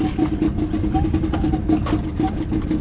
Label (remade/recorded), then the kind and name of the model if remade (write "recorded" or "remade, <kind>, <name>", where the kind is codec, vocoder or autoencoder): recorded